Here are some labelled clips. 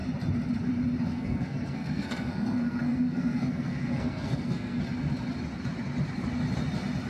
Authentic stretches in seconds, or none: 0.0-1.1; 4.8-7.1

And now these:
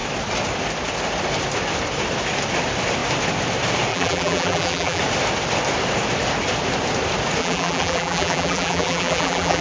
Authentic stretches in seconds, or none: 0.0-3.9; 5.0-7.4